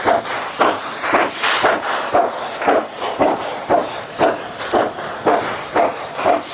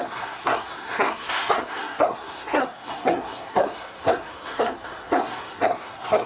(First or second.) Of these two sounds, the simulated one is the second